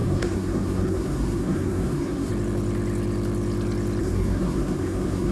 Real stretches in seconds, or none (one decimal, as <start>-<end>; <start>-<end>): 2.3-4.0